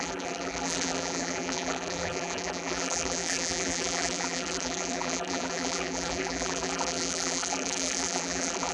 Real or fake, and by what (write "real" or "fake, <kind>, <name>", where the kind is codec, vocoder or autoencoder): fake, vocoder, BigVGAN v2